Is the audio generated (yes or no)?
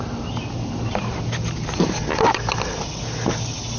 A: no